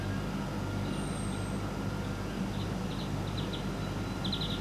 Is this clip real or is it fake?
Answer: real